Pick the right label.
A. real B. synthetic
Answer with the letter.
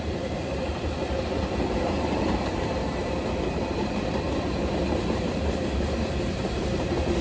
B